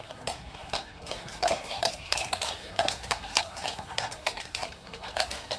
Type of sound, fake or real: fake